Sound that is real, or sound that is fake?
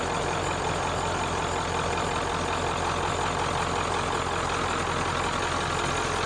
real